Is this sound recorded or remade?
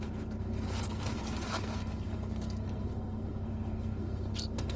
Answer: remade